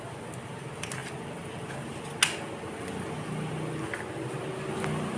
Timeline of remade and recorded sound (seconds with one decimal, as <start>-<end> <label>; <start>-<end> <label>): 0.0-5.2 recorded